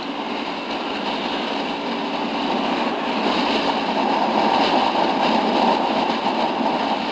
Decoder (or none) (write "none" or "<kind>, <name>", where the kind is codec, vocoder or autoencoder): none